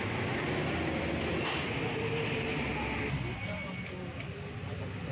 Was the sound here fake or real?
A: real